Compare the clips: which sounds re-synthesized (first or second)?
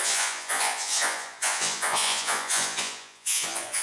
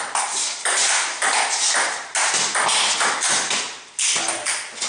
first